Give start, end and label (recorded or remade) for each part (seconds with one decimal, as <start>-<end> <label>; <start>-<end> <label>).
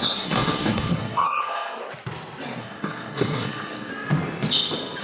0.0-1.8 remade; 1.8-2.6 recorded; 2.6-3.9 remade; 3.9-5.0 recorded